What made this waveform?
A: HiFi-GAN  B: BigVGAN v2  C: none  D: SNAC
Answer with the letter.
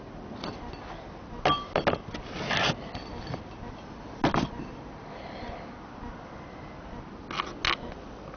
C